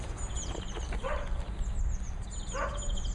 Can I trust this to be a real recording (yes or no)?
yes